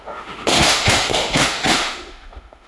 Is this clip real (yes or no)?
no